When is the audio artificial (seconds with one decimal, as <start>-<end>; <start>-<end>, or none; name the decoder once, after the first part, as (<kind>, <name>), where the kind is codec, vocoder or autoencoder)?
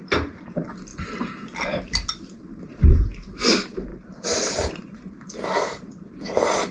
3.9-5.9 (vocoder, BigVGAN v2)